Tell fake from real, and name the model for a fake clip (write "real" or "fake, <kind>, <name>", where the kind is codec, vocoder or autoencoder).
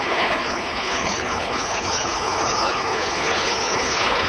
fake, codec, HILCodec